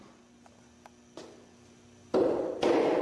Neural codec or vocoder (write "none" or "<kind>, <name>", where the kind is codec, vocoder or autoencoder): none